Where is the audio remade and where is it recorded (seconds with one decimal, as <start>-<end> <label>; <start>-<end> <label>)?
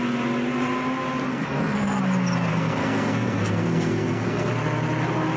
0.0-1.3 recorded; 1.3-2.0 remade; 2.0-2.5 recorded; 2.5-4.5 remade; 4.5-5.4 recorded